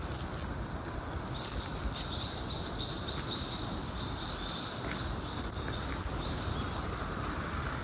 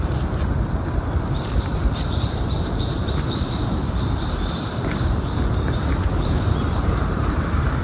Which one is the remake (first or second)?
second